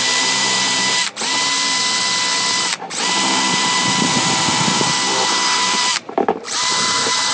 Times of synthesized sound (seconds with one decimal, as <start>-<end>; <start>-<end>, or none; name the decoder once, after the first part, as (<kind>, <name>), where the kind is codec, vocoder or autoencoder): 0.0-1.0 (vocoder, BigVGAN v2); 2.9-7.3